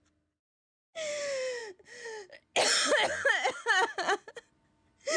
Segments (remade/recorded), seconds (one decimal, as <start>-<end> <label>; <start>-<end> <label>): 0.0-5.2 recorded

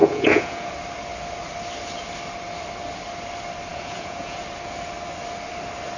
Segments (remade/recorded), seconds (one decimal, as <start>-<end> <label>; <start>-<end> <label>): 0.0-0.7 remade; 0.7-3.7 recorded; 3.7-4.4 remade; 4.4-6.0 recorded

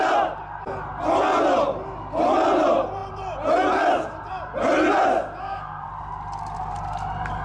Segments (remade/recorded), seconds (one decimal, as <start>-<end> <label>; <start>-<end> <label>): 0.0-5.4 recorded; 5.4-5.9 remade; 5.9-7.4 recorded

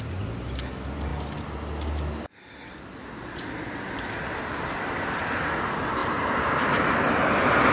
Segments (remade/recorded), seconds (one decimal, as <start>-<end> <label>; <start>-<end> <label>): 0.0-6.0 recorded; 6.0-7.3 remade; 7.3-7.7 recorded

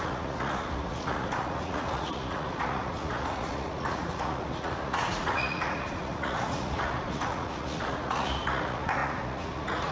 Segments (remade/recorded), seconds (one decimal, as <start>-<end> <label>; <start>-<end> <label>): 0.0-9.9 remade

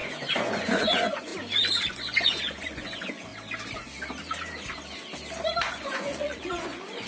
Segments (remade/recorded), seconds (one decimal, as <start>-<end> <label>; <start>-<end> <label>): 0.0-1.3 remade; 1.3-1.9 recorded; 1.9-3.3 remade; 3.3-5.7 recorded; 5.7-7.1 remade

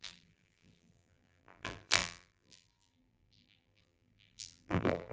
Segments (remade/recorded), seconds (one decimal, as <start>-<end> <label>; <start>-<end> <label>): 0.0-5.1 remade